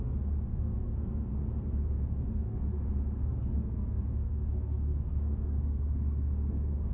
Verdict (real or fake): fake